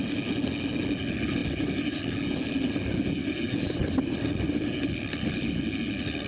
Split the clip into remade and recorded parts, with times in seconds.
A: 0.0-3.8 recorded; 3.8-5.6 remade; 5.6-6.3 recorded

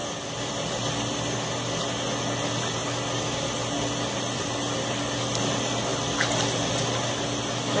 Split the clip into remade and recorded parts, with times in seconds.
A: 0.0-7.8 recorded